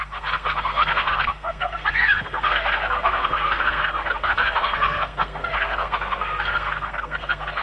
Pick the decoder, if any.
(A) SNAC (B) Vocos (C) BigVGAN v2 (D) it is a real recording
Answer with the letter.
A